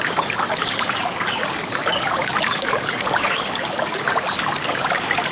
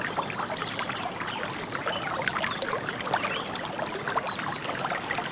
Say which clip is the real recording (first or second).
second